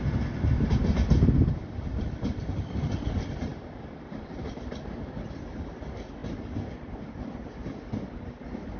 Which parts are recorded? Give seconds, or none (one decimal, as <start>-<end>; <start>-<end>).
0.0-8.8